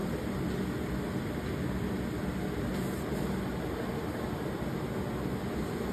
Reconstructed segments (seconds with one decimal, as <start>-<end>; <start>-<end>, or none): 0.0-0.5; 2.7-3.8